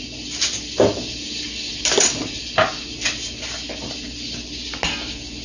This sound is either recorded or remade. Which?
recorded